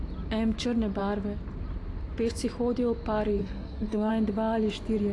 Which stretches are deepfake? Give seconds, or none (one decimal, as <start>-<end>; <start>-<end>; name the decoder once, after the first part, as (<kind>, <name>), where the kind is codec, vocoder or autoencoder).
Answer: 3.4-4.1 (codec, SNAC)

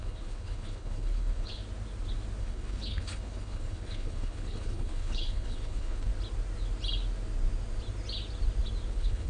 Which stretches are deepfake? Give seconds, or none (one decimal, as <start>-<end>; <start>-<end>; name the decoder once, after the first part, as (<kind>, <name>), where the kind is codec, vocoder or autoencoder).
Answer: 0.0-1.6 (codec, HILCodec); 2.4-6.1; 8.9-9.3

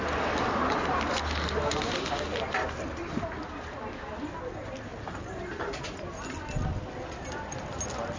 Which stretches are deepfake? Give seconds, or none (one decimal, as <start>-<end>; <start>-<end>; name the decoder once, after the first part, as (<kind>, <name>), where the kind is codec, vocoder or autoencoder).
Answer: 4.9-5.6 (vocoder, BigVGAN v2)

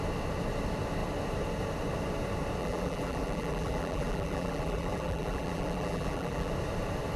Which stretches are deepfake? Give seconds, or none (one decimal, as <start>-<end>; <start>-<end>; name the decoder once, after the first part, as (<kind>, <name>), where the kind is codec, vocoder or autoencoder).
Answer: 2.6-6.5 (vocoder, BigVGAN v2)

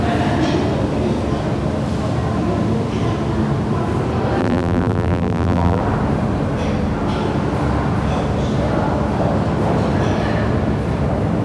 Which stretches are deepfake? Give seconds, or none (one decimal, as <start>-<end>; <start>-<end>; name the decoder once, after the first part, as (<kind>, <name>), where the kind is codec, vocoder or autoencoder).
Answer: 4.4-5.8 (vocoder, BigVGAN v2)